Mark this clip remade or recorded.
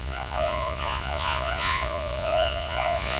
remade